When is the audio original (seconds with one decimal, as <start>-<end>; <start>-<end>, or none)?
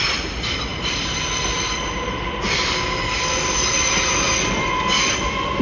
0.0-5.6